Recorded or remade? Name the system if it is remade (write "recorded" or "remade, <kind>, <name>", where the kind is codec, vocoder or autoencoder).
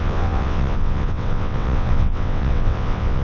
remade, vocoder, WaveNeXt